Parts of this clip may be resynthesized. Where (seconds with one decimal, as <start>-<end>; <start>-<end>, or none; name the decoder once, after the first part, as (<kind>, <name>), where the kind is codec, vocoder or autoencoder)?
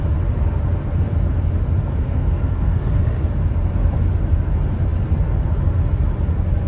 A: 1.9-3.0 (codec, SNAC)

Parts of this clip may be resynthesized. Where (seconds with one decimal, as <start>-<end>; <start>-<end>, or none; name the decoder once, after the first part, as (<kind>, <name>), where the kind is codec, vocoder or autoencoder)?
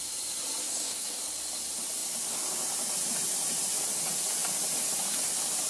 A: 0.6-1.2 (codec, DAC)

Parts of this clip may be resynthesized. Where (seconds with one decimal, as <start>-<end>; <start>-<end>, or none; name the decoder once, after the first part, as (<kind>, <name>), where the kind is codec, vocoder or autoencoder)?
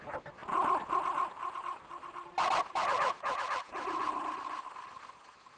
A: none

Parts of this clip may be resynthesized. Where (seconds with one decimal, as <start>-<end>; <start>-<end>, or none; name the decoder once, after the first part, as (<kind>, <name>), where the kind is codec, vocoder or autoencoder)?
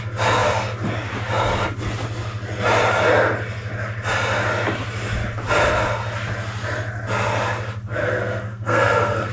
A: 8.0-9.3 (codec, SNAC)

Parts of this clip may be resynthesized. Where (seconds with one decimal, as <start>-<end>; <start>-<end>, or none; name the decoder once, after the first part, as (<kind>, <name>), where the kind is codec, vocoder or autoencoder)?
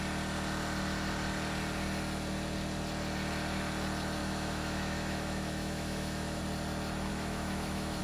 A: 4.2-6.4 (autoencoder, DAC-VAE); 7.1-8.0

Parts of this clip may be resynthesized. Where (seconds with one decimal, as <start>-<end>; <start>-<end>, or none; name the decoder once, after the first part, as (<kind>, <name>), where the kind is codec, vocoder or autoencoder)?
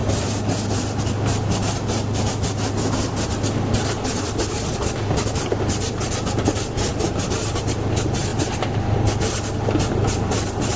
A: none